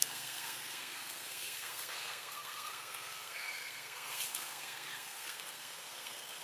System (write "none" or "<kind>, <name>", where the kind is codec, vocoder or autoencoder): codec, SNAC